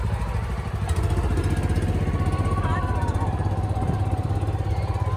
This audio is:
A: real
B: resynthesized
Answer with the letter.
A